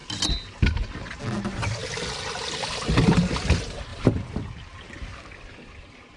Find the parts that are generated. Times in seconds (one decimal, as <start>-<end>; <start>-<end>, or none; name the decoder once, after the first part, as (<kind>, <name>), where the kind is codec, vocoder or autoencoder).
3.9-5.2 (vocoder, BigVGAN v2)